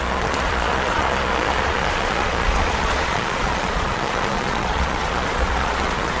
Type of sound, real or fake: fake